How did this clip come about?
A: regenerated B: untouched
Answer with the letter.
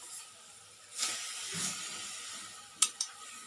B